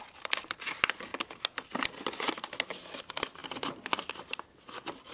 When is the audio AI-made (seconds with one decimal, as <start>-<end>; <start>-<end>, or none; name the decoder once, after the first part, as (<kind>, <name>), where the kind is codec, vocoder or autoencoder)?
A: none